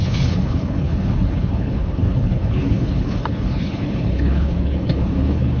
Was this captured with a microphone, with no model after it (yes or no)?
no